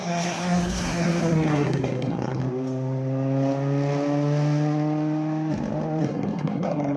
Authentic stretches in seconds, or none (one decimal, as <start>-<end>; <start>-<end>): 2.4-6.0